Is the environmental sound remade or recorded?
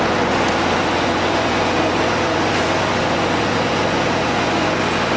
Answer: remade